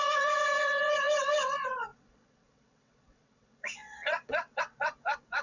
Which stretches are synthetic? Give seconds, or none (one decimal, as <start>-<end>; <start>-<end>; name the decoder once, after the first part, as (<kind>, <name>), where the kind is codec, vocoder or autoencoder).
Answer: 0.0-5.4 (vocoder, WaveNeXt)